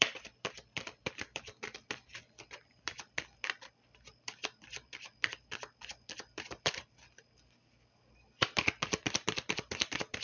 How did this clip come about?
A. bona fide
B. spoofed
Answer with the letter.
B